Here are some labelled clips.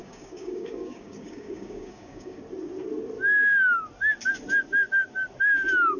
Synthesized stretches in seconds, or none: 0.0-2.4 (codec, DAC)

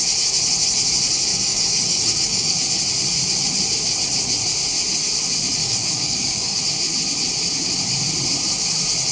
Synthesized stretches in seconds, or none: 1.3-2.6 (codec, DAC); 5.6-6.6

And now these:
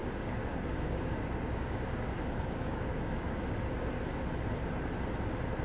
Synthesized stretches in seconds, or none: 0.0-3.4 (codec, DAC)

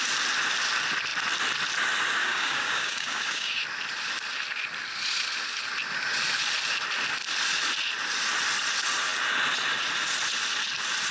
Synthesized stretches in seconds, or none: 2.2-3.6 (codec, DAC)

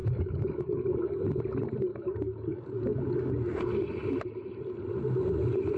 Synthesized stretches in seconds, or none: 0.0-1.2 (codec, DAC); 1.9-3.3